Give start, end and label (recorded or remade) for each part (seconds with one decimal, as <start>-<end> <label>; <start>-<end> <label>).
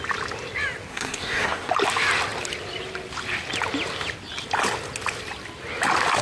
0.0-0.9 recorded; 0.9-1.7 remade; 1.7-6.2 recorded